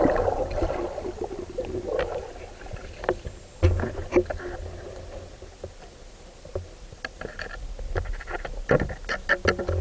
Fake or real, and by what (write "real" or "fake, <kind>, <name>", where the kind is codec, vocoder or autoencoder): real